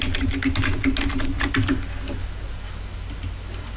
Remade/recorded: recorded